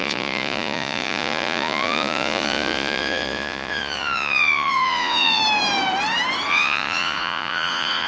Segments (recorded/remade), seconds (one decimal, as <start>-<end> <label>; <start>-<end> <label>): 0.0-5.4 remade; 5.4-6.5 recorded; 6.5-8.1 remade